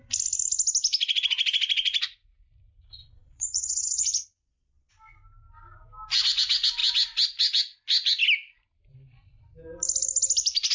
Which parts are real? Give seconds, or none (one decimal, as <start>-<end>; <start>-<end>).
0.0-3.0; 4.9-10.7